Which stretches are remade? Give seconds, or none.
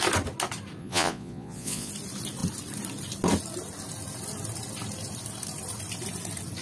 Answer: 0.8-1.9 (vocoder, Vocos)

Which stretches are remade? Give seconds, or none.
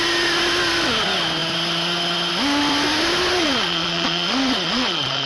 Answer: 3.4-5.3 (vocoder, Vocos)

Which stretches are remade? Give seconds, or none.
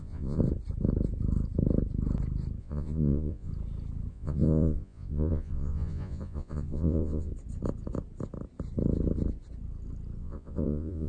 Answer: 0.0-0.4 (vocoder, Vocos); 2.6-3.5; 4.1-7.3; 10.2-11.1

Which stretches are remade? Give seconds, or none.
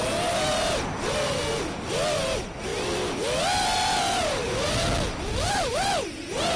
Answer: none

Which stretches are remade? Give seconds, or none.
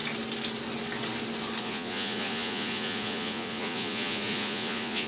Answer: 1.6-5.1 (vocoder, Vocos)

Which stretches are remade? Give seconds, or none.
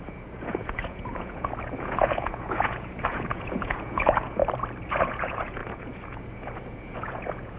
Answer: 0.0-4.4 (vocoder, Vocos); 4.9-7.6